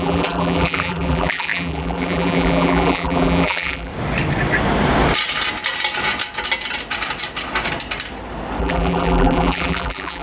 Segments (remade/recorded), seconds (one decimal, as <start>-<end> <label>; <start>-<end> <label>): 0.0-3.9 remade; 3.9-8.6 recorded; 8.6-10.2 remade

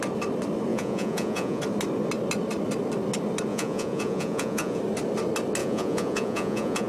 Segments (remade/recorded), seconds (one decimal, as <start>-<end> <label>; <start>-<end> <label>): 0.0-0.7 recorded; 0.7-1.6 remade; 1.6-3.5 recorded; 3.5-4.8 remade; 4.8-5.6 recorded; 5.6-6.9 remade